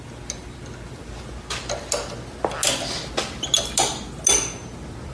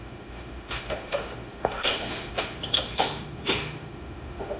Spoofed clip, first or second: second